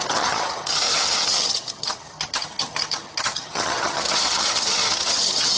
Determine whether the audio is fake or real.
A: fake